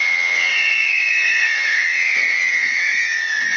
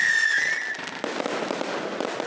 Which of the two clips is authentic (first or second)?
second